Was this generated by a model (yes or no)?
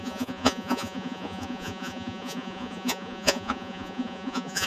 yes